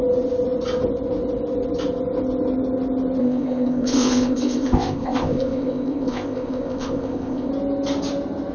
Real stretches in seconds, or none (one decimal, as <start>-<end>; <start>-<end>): 0.0-3.2; 7.5-8.5